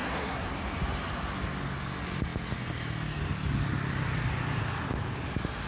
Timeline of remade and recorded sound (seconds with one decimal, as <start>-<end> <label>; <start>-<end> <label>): 0.0-0.5 remade; 0.5-5.7 recorded